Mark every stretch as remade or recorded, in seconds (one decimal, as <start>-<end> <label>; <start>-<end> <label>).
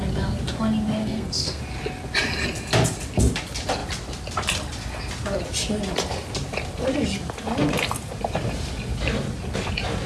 0.0-1.0 recorded; 1.0-1.6 remade; 1.6-10.1 recorded